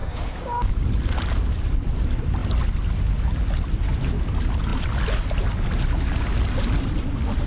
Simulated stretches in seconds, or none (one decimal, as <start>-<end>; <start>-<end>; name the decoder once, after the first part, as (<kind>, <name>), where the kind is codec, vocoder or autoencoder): 0.0-0.7 (codec, DAC)